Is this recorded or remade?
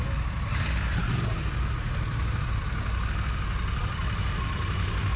recorded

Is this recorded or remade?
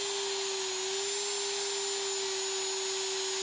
recorded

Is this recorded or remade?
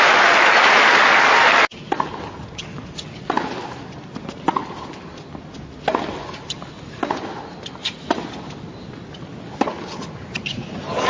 recorded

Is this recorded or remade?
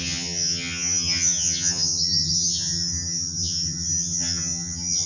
remade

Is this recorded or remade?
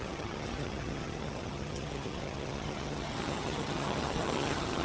remade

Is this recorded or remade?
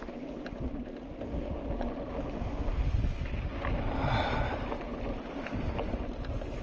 recorded